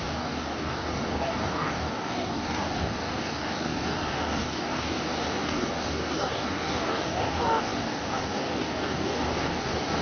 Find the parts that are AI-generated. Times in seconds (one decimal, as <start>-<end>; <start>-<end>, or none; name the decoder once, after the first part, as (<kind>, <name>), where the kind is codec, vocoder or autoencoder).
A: 0.0-10.0 (codec, DAC)

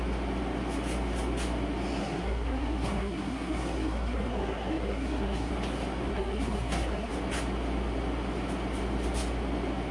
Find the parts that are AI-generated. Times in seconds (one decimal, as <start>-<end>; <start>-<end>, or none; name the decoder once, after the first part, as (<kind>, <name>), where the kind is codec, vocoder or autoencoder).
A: 2.0-5.5 (codec, SNAC); 6.1-7.1

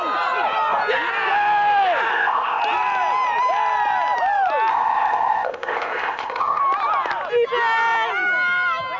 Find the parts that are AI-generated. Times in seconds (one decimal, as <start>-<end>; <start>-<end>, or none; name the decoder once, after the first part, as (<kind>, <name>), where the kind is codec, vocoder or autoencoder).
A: 2.1-2.6 (codec, ZipCodec); 4.7-6.6

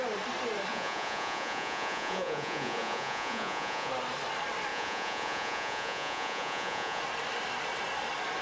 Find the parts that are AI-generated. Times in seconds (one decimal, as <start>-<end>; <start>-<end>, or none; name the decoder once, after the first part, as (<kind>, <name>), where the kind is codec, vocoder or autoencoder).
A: 0.7-3.9 (vocoder, Vocos); 4.7-7.0

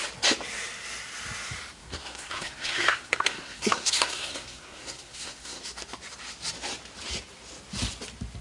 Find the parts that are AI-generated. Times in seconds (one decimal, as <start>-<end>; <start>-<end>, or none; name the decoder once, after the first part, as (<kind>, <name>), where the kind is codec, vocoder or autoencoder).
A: 1.8-5.6 (codec, SNAC)

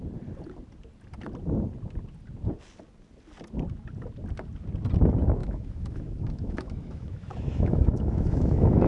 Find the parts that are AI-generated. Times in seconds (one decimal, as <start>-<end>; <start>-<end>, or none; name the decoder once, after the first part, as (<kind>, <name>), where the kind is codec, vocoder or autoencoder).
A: 5.4-8.9 (autoencoder, DAC-VAE)